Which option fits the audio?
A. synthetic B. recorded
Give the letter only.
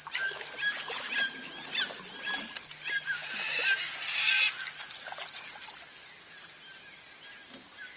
B